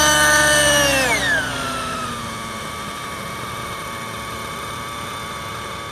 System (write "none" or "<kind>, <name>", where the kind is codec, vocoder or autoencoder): none